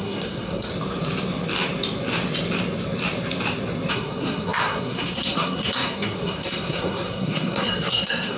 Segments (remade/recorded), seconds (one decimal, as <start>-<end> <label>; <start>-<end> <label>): 0.0-0.7 remade; 0.7-3.9 recorded; 3.9-8.4 remade